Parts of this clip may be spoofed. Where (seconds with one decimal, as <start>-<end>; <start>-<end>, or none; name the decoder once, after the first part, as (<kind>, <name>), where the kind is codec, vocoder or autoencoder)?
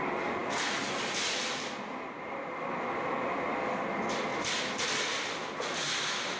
none